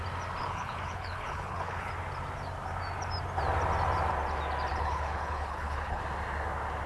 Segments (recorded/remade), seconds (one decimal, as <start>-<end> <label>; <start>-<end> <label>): 0.0-0.4 recorded; 0.4-1.9 remade; 1.9-4.7 recorded; 4.7-6.0 remade; 6.0-6.9 recorded